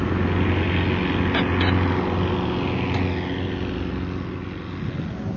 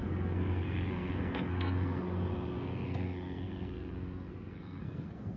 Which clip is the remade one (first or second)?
second